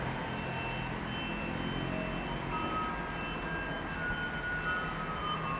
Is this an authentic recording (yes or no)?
yes